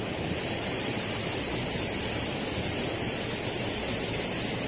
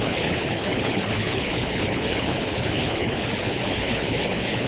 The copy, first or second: second